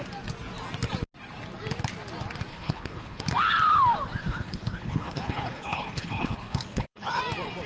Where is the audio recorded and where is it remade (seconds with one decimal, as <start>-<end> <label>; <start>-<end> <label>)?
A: 0.0-2.5 recorded; 2.5-3.2 remade; 3.2-4.2 recorded; 4.2-7.2 remade; 7.2-7.7 recorded